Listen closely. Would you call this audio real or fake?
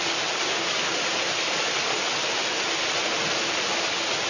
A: real